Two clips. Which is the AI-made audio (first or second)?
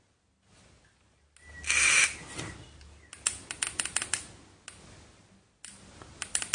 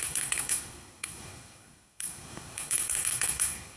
second